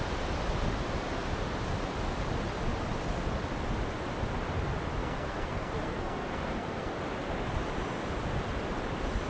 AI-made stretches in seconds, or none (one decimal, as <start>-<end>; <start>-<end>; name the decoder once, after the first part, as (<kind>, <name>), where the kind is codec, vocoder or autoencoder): 5.0-7.0 (codec, SNAC)